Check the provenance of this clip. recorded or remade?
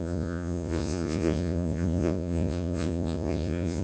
remade